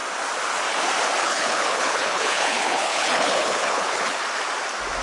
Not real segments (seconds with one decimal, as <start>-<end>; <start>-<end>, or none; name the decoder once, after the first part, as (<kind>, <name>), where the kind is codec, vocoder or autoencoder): 1.2-4.2 (codec, HILCodec)